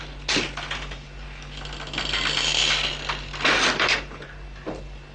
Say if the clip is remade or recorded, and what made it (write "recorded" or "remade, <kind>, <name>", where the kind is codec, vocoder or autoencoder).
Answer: recorded